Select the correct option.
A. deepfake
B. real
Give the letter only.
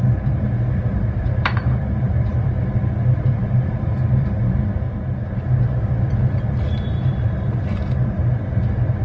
A